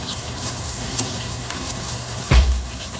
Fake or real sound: fake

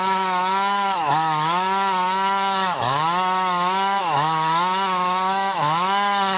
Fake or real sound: fake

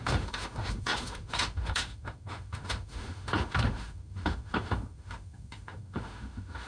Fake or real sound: fake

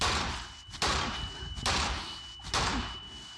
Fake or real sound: fake